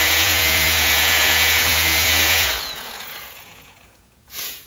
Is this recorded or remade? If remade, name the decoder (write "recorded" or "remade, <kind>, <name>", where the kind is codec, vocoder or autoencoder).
remade, vocoder, Vocos